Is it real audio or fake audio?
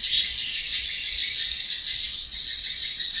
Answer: real